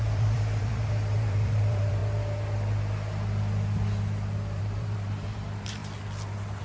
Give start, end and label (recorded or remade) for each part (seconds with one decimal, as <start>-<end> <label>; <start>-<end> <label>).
0.0-2.0 remade; 2.0-4.6 recorded; 4.6-5.8 remade; 5.8-6.6 recorded